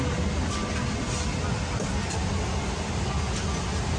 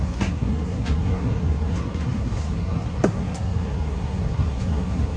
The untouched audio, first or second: first